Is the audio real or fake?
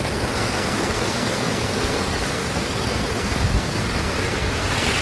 fake